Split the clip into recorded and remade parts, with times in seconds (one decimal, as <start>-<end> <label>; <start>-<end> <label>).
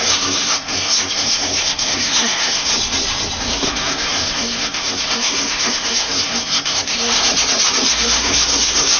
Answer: 0.0-2.7 remade; 2.7-3.4 recorded; 3.4-7.3 remade; 7.3-7.9 recorded; 7.9-9.0 remade